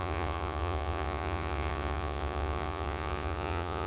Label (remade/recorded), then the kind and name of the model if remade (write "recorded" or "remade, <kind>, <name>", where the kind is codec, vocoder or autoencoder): remade, vocoder, Vocos